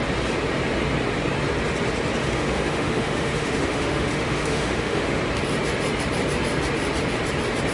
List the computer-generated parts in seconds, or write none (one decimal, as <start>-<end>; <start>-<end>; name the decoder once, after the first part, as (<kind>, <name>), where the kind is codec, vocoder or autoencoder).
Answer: 2.2-5.2 (autoencoder, DAC-VAE)